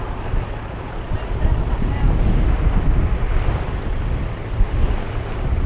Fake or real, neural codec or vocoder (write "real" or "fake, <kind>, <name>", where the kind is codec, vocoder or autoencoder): real